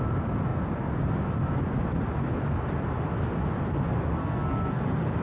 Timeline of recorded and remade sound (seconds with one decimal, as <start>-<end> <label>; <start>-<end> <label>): 0.0-4.2 recorded; 4.2-4.8 remade; 4.8-5.2 recorded

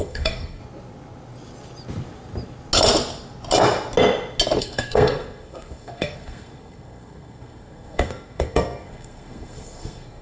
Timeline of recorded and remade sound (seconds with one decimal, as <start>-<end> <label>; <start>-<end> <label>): 0.0-0.6 remade; 0.6-4.6 recorded; 4.6-10.2 remade